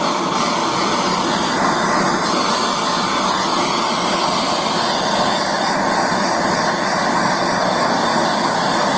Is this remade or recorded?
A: recorded